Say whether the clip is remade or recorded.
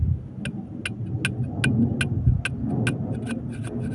recorded